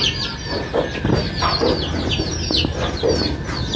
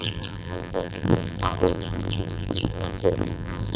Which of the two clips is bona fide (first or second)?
first